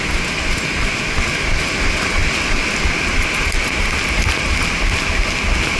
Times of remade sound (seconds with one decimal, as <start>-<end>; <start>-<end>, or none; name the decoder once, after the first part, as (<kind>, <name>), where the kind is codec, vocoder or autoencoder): none